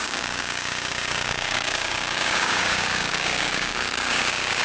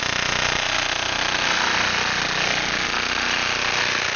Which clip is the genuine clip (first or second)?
second